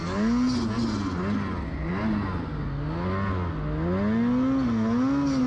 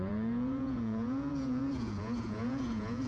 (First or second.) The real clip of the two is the first